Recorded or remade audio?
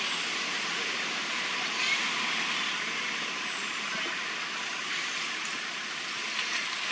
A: recorded